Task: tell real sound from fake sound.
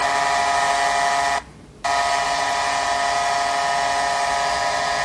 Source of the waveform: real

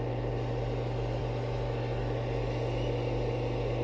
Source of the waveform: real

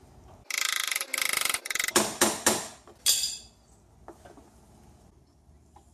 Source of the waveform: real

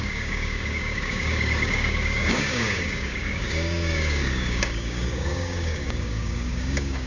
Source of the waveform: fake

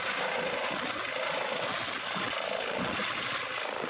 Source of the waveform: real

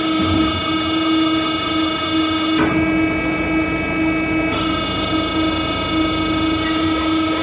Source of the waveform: real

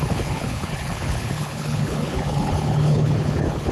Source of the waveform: fake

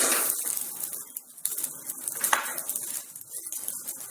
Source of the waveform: real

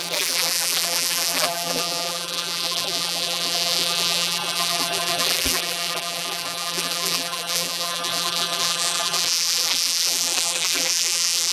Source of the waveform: fake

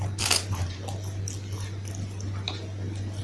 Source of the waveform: real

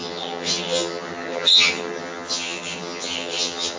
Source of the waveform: fake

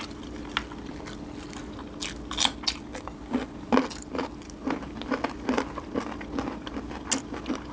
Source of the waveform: real